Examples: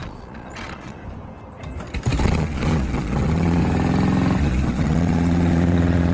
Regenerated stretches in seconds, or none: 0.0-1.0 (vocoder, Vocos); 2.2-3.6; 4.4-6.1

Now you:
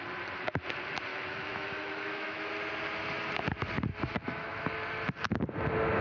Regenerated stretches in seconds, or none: 1.1-2.5 (autoencoder, DAC-VAE); 3.9-4.7

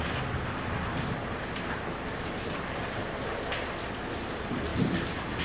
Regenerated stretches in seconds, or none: 4.7-5.4 (vocoder, BigVGAN v2)

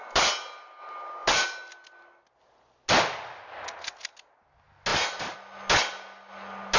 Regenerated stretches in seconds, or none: none